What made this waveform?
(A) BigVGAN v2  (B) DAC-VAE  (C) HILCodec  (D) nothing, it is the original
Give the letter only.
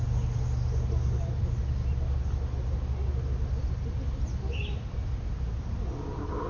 D